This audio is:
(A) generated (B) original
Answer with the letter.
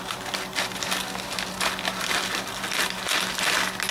B